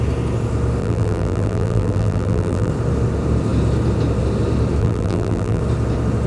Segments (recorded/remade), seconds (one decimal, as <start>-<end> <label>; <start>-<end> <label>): 0.0-0.8 recorded; 0.8-2.7 remade; 2.7-4.8 recorded; 4.8-5.6 remade; 5.6-6.3 recorded